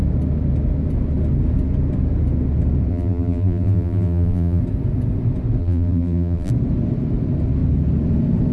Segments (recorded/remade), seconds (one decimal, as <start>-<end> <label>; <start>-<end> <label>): 0.0-2.9 recorded; 2.9-4.6 remade; 4.6-5.6 recorded; 5.6-6.5 remade; 6.5-8.5 recorded